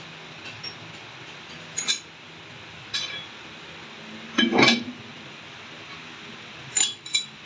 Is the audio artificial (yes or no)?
no